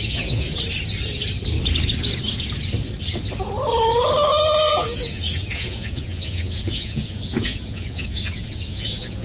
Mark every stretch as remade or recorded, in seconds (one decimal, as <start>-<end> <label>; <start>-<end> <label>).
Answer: 0.0-0.5 remade; 0.5-4.7 recorded; 4.7-9.2 remade